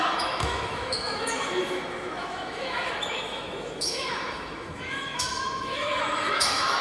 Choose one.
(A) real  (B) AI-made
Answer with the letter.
B